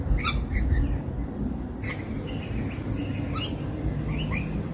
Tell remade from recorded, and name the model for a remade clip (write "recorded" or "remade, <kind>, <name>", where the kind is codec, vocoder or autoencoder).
recorded